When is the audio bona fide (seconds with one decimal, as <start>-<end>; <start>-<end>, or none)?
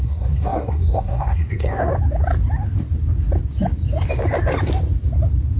1.9-5.6